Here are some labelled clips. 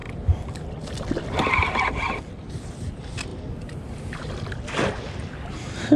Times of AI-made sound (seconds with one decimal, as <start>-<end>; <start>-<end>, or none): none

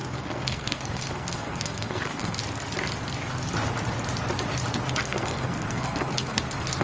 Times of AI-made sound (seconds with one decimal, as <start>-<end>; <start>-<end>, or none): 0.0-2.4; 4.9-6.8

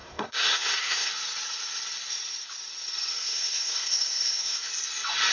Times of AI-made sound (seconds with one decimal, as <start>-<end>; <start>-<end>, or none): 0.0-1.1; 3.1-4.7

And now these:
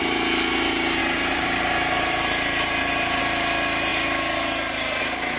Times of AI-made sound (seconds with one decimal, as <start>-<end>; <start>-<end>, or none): 1.0-3.2

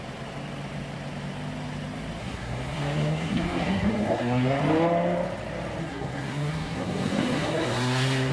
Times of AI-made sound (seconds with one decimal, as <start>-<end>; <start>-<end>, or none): 2.2-4.6; 5.8-8.3

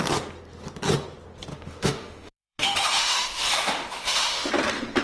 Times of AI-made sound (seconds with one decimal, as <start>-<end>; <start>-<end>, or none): 1.5-4.5

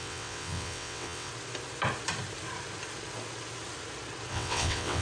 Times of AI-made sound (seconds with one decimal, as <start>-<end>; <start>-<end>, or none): 0.0-1.3; 4.3-5.0

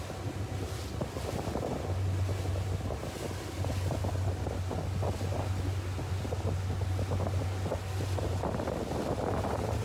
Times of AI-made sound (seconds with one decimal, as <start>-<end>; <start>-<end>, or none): none